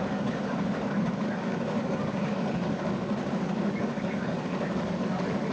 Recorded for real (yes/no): no